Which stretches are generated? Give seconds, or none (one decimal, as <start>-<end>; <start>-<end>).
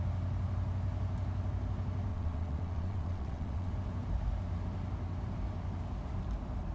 2.1-3.7